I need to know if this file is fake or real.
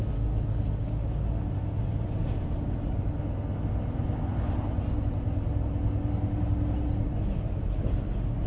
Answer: real